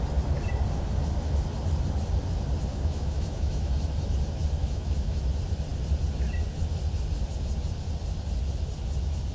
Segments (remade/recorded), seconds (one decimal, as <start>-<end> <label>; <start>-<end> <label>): 0.0-2.7 recorded; 2.7-3.7 remade; 3.7-4.6 recorded; 4.6-5.2 remade; 5.2-9.3 recorded